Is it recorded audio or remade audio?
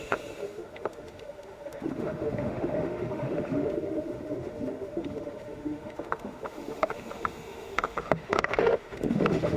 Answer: remade